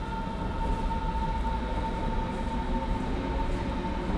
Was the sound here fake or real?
real